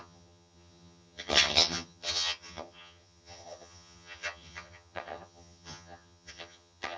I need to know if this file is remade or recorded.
remade